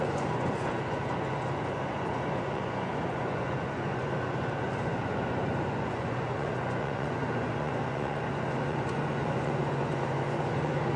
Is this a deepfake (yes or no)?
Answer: yes